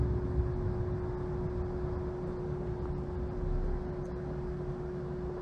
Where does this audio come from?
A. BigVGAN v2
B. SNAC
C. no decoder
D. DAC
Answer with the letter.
C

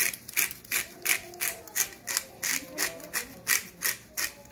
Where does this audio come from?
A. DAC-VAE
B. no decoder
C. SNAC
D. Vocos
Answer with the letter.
B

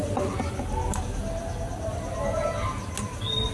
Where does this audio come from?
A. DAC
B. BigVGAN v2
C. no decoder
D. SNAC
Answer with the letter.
C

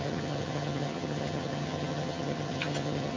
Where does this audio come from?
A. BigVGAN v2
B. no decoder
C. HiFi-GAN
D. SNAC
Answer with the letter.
C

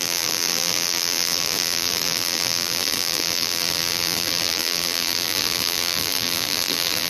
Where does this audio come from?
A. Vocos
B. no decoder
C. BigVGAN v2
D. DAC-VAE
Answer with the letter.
C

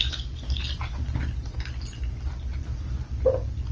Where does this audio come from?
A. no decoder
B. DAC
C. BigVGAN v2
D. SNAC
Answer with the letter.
A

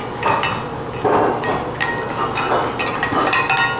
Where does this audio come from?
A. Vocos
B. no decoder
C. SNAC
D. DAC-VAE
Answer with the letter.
B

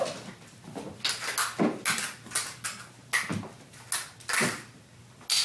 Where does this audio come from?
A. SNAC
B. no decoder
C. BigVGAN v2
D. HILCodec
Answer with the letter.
B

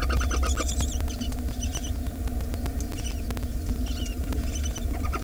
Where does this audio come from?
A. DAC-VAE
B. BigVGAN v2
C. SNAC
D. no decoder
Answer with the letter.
D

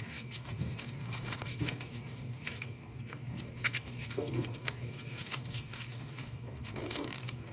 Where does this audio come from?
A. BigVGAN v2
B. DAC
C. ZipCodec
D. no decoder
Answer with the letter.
B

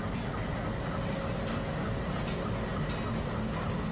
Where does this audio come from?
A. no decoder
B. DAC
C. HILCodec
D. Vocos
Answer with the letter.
A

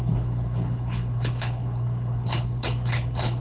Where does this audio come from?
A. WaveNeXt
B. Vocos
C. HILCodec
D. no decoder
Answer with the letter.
C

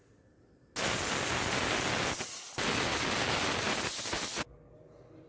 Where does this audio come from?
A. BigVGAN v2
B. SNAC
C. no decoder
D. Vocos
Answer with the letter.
C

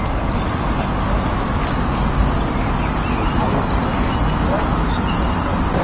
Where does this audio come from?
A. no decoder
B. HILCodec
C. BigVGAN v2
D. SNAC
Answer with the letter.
A